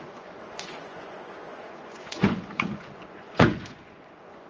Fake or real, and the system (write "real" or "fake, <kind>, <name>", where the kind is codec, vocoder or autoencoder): fake, vocoder, Vocos